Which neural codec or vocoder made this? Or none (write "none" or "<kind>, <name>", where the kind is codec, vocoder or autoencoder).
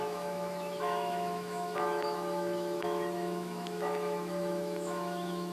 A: autoencoder, DAC-VAE